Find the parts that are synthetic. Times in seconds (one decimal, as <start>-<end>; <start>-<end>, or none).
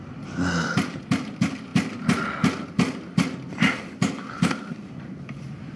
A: none